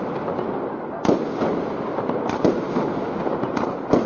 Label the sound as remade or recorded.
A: recorded